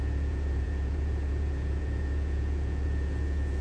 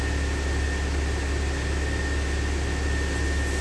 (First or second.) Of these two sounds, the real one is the second